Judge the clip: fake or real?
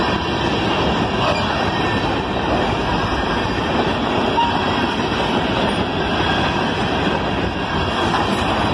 real